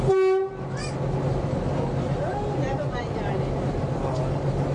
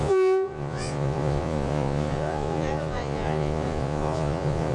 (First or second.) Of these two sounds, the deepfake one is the second